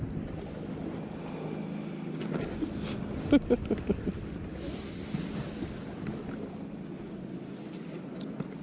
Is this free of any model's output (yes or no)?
yes